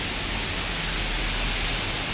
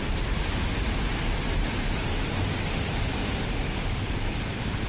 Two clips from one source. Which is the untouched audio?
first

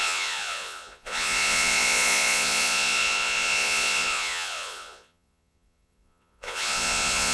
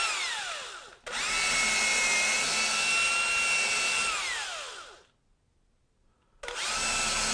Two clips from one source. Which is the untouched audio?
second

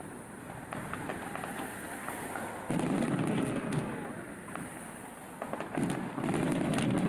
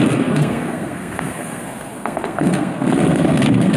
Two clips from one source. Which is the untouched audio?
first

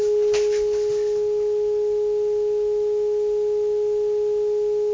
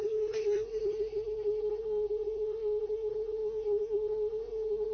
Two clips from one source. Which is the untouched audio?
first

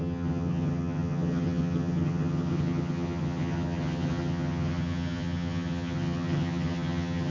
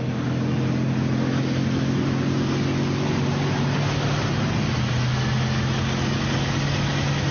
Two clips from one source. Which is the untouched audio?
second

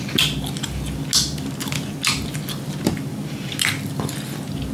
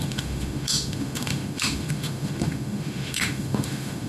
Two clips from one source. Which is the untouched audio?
first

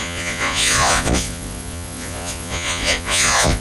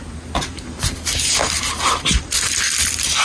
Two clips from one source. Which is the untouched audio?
second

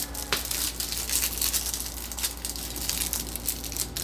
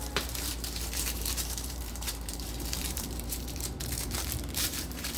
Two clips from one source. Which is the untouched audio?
first